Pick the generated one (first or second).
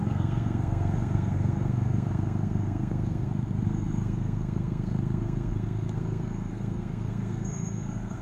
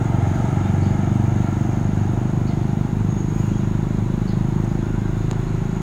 first